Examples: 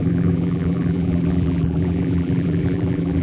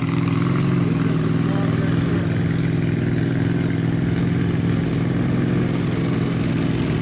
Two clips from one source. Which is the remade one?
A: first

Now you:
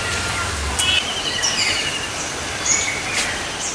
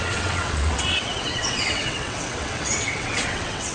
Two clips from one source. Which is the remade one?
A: second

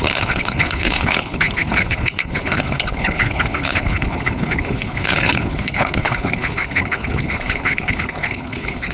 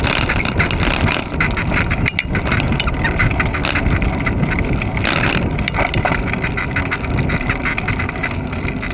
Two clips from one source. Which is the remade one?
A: first